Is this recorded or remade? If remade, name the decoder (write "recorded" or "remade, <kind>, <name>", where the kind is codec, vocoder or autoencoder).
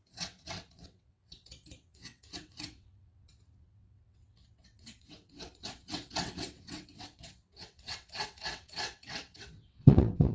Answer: remade, vocoder, WaveNeXt